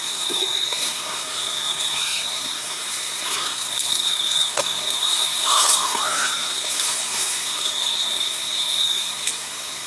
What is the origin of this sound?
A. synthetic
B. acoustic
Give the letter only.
A